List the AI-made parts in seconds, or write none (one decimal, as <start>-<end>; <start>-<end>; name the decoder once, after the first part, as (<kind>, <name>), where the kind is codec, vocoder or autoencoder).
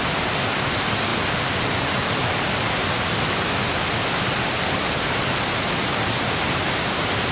none